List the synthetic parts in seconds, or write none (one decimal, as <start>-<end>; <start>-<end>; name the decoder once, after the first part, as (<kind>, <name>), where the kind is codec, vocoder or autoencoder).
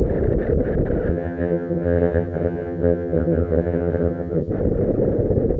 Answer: 1.1-4.5 (vocoder, HiFi-GAN)